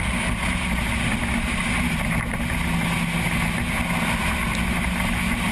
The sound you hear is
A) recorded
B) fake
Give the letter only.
A